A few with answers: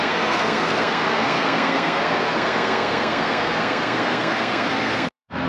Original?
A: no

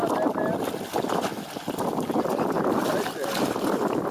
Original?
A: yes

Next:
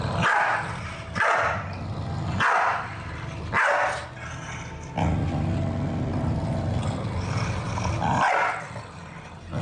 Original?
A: yes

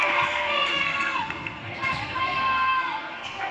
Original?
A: no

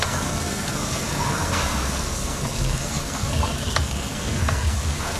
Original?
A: no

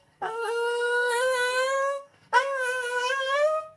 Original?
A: no